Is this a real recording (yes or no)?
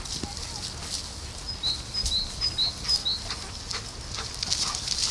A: yes